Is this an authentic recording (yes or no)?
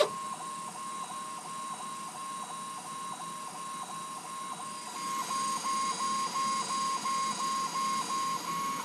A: yes